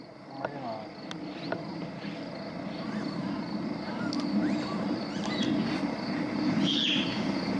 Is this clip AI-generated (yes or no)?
no